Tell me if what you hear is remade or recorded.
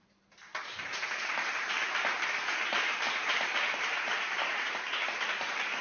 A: remade